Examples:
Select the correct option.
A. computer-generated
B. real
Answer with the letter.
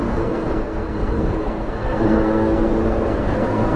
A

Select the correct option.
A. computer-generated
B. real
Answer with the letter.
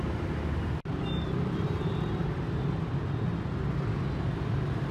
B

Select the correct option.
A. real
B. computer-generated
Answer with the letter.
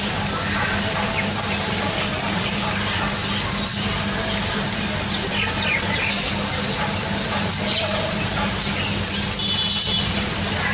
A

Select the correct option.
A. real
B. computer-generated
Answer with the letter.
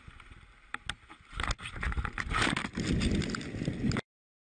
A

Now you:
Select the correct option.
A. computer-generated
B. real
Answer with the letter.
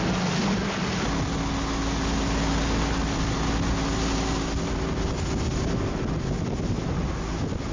B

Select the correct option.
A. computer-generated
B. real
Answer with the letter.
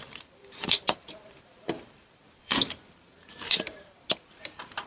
A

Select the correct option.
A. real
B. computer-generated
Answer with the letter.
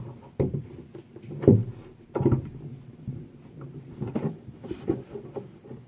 A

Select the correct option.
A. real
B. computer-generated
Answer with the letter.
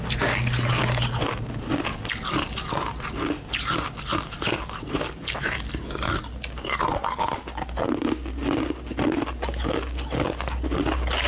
A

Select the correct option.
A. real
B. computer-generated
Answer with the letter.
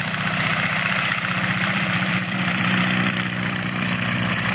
B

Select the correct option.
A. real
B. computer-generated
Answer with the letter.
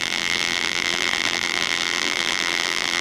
B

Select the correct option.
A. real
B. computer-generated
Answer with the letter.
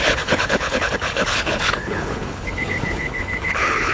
B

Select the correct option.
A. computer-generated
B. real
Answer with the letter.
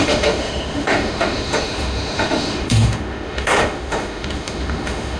A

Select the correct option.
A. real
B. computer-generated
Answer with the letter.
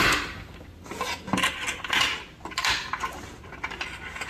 A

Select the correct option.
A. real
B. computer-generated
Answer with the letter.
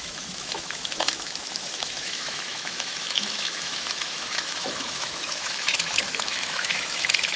B